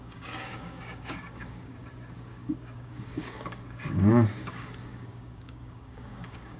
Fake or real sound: fake